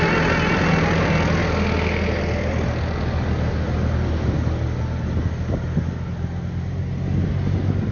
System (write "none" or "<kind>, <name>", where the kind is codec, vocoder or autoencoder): none